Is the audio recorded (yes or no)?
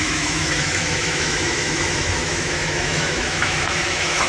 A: no